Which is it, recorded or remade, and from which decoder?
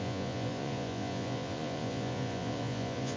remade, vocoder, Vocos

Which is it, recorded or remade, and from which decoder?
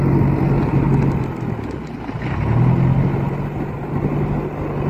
recorded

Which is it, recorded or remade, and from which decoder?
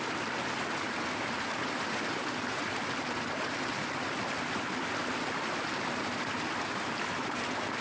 recorded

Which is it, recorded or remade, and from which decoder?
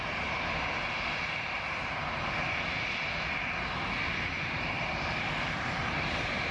recorded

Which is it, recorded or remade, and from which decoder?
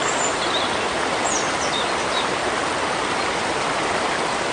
recorded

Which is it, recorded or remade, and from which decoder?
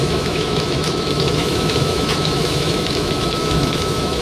remade, autoencoder, DAC-VAE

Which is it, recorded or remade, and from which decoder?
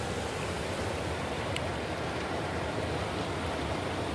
recorded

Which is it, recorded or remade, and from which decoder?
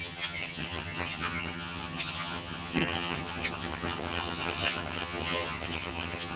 remade, vocoder, HiFi-GAN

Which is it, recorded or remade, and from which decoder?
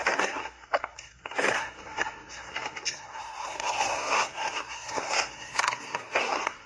remade, codec, SNAC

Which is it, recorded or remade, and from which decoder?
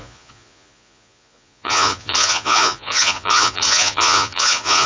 remade, vocoder, Vocos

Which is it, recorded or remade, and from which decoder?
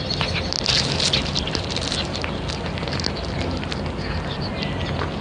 recorded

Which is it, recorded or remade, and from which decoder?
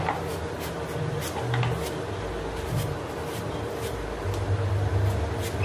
recorded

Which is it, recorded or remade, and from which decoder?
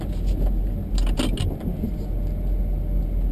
recorded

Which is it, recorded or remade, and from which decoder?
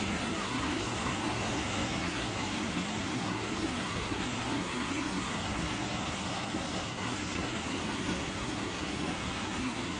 remade, codec, SNAC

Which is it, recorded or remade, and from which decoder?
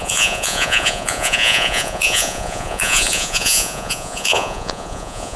remade, vocoder, Vocos